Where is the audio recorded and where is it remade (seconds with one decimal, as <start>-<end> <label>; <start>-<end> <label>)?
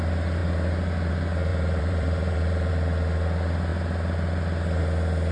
0.0-1.5 recorded; 1.5-2.7 remade; 2.7-5.3 recorded